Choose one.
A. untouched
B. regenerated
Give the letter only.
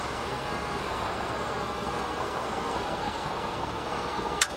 B